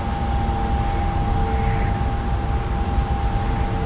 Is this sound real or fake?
real